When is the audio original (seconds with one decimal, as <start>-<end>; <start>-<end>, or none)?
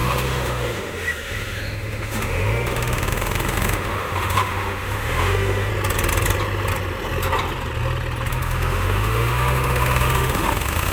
5.7-8.3